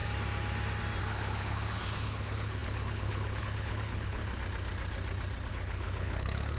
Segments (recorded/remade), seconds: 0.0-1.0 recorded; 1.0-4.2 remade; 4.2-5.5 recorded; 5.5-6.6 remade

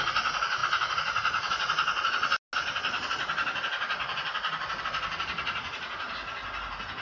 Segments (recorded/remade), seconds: 0.0-7.0 recorded

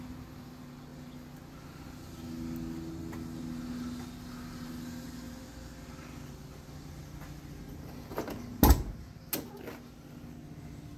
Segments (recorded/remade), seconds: 0.0-11.0 recorded

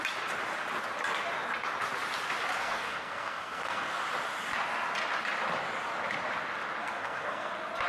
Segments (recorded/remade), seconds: 0.0-2.6 recorded; 2.6-4.0 remade; 4.0-6.8 recorded; 6.8-7.5 remade; 7.5-7.9 recorded